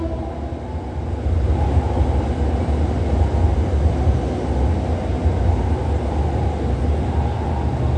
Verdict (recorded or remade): recorded